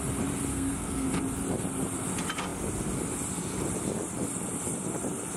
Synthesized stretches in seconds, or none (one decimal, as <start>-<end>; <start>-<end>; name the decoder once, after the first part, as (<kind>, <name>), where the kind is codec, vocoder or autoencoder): 0.5-1.2 (codec, SNAC)